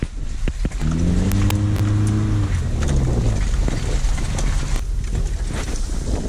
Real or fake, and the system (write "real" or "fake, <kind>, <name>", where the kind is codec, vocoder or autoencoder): real